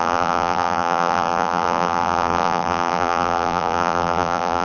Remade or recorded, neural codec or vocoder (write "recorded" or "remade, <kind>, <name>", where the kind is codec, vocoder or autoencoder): remade, vocoder, BigVGAN v2